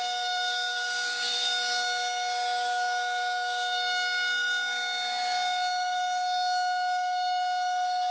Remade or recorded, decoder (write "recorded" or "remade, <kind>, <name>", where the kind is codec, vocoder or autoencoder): remade, codec, DAC